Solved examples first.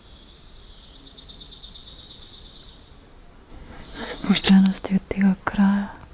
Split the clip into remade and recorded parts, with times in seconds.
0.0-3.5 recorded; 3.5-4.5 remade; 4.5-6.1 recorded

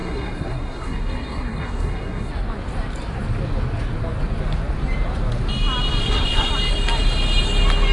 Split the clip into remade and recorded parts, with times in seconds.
0.0-2.3 remade; 2.3-6.0 recorded; 6.0-6.5 remade; 6.5-7.9 recorded

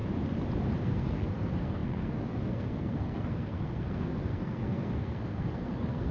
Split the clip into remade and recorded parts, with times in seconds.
0.0-0.8 recorded; 0.8-6.1 remade

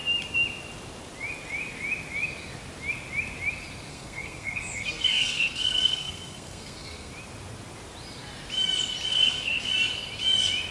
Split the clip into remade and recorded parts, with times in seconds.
0.0-3.9 recorded; 3.9-7.1 remade; 7.1-9.1 recorded; 9.1-9.7 remade; 9.7-10.7 recorded

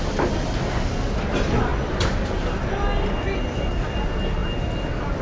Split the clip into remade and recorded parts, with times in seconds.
0.0-5.2 recorded

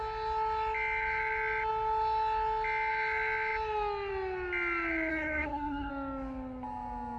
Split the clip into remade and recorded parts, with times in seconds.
0.0-5.1 recorded; 5.1-5.9 remade; 5.9-7.2 recorded